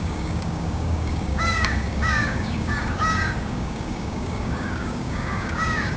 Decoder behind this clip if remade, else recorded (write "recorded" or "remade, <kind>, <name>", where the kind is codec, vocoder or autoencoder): remade, codec, DAC